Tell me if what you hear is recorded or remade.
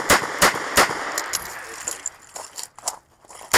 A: recorded